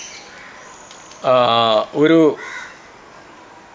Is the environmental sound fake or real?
real